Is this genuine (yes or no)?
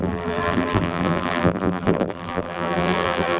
no